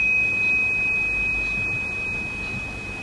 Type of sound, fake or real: real